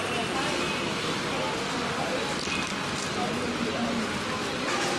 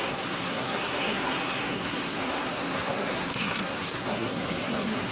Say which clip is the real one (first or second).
first